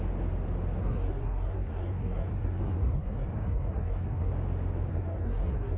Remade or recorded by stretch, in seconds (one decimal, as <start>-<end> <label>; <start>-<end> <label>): 0.0-0.8 recorded; 0.8-4.3 remade; 4.3-4.9 recorded; 4.9-5.8 remade